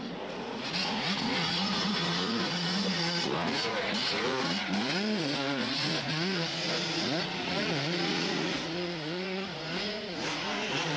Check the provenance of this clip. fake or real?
fake